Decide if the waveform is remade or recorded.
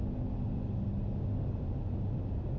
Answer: recorded